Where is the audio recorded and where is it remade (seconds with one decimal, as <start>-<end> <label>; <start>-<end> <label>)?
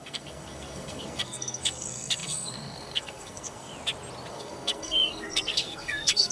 0.0-3.7 remade; 3.7-4.3 recorded; 4.3-6.3 remade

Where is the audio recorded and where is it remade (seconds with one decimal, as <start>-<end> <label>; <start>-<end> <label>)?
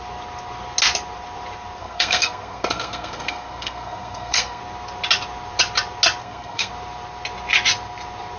0.0-1.8 recorded; 1.8-4.6 remade; 4.6-6.2 recorded; 6.2-6.7 remade; 6.7-8.4 recorded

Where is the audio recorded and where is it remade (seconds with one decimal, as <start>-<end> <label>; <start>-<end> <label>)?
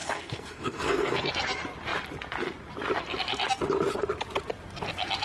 0.0-1.3 remade; 1.3-5.2 recorded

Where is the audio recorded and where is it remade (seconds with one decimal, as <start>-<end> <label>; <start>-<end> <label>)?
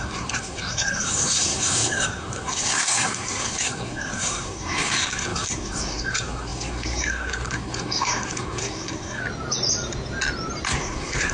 0.0-9.2 remade; 9.2-10.7 recorded; 10.7-11.3 remade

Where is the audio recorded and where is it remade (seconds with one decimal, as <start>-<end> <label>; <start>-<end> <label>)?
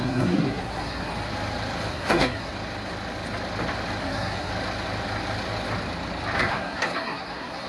0.0-1.1 remade; 1.1-1.9 recorded; 1.9-2.5 remade; 2.5-4.0 recorded; 4.0-4.5 remade; 4.5-6.4 recorded; 6.4-7.7 remade